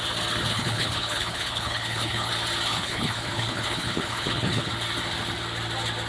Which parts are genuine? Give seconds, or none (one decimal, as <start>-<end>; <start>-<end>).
0.0-0.5; 2.3-2.7; 4.7-6.1